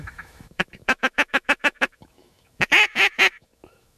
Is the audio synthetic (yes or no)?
yes